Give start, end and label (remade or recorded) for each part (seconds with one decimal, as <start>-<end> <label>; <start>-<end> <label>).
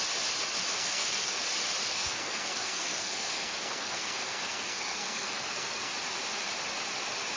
0.0-0.7 recorded; 0.7-1.4 remade; 1.4-1.9 recorded; 1.9-5.9 remade; 5.9-7.4 recorded